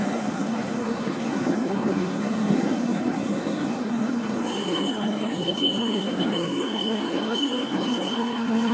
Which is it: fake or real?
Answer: fake